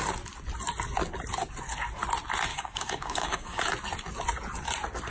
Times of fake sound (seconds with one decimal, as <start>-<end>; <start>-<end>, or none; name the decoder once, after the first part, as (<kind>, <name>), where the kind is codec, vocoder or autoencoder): 2.5-3.6 (codec, DAC)